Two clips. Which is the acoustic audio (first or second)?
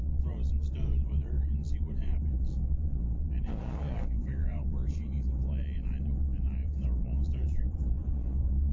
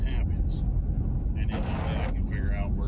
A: second